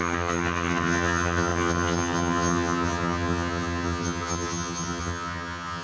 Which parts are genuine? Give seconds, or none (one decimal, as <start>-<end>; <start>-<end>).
none